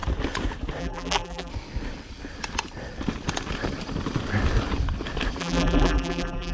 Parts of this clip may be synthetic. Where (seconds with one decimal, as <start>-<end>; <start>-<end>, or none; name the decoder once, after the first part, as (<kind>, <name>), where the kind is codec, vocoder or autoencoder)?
0.8-1.5 (vocoder, BigVGAN v2); 5.4-6.5